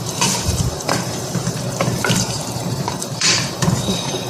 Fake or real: fake